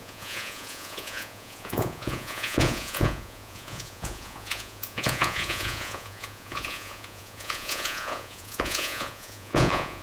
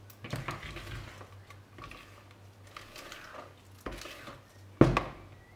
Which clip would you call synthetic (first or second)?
first